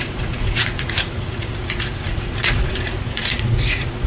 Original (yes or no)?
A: no